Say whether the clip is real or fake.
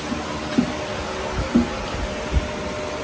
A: real